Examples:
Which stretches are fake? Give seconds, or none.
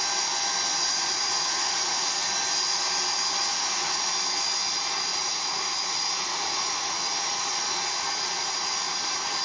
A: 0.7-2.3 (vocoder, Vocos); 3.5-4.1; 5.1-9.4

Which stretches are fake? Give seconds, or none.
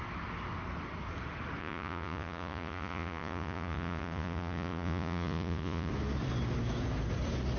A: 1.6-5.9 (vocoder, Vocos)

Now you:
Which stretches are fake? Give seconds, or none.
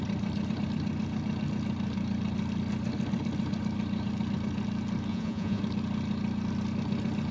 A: 5.1-5.6 (vocoder, Vocos)